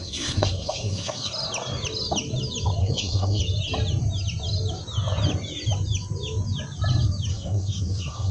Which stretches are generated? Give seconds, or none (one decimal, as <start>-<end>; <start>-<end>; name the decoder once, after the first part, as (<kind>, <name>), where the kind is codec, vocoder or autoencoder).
0.0-1.3 (codec, SNAC); 2.8-3.4; 7.3-8.3